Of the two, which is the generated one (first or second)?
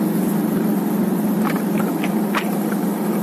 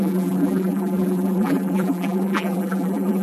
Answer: second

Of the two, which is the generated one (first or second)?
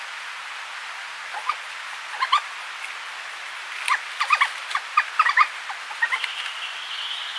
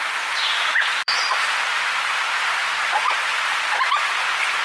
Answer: second